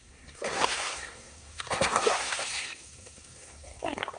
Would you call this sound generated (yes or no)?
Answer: yes